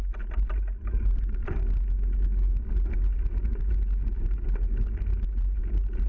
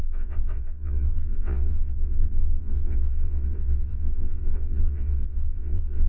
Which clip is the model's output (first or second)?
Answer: second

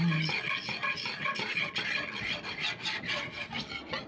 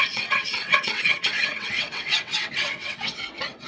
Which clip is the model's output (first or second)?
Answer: second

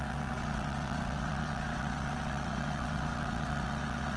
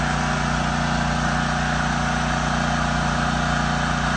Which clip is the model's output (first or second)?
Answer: first